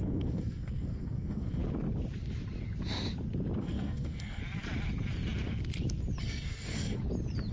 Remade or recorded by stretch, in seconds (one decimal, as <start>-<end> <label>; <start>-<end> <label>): 0.0-1.6 remade; 1.6-3.6 recorded; 3.6-4.4 remade; 4.4-6.2 recorded; 6.2-7.0 remade; 7.0-7.5 recorded